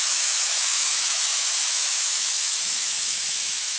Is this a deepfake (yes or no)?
yes